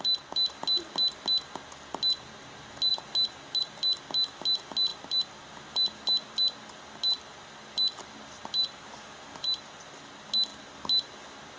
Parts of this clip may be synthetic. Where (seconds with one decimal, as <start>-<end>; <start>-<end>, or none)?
4.9-5.4; 8.6-9.6